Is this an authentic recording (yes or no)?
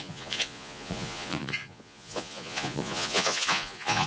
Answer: no